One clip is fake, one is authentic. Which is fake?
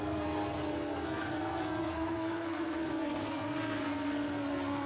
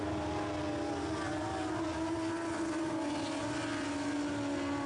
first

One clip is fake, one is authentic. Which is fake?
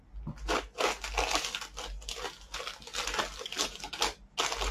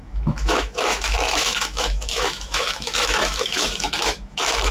second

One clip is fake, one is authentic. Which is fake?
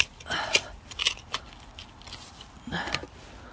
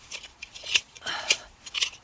second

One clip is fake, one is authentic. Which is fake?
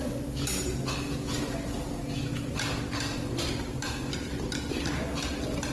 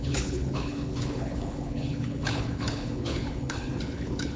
second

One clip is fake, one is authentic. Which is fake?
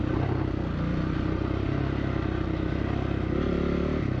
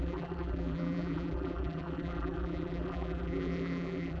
second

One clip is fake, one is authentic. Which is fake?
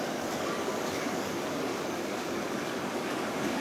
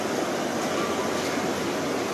first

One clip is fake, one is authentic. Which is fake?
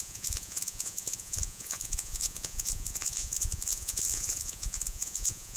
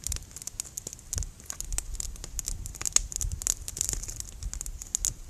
first